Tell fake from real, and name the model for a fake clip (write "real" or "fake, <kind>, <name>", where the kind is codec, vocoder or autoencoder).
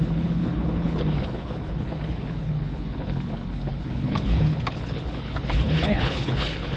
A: fake, codec, HILCodec